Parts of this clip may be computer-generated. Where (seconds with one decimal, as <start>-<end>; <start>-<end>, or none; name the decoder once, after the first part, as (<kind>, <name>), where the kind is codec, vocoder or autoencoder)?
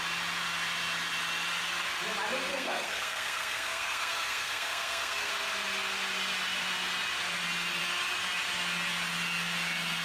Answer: 2.5-5.3 (codec, SNAC)